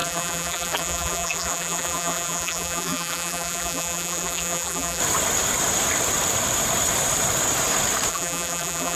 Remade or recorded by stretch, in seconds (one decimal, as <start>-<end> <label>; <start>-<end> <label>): 0.0-5.0 remade; 5.0-8.1 recorded; 8.1-9.0 remade